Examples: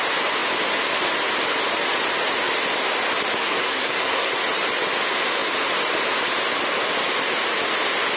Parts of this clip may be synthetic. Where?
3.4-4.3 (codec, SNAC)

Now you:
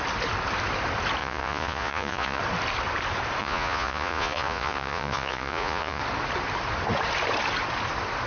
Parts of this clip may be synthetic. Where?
1.2-2.4 (vocoder, Vocos); 3.4-6.0

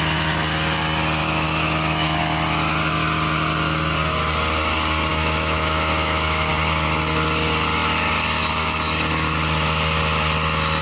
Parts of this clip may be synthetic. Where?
1.2-2.2 (autoencoder, DAC-VAE); 5.1-6.5

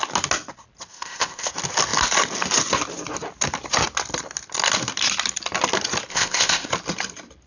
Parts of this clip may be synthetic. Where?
0.9-1.5 (codec, ZipCodec); 6.1-6.7

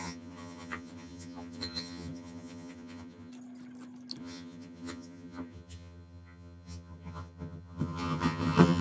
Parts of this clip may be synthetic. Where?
0.0-3.3 (vocoder, HiFi-GAN); 4.2-8.8

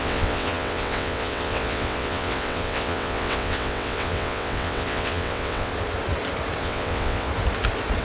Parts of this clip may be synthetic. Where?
0.0-5.7 (vocoder, WaveNeXt); 6.6-7.3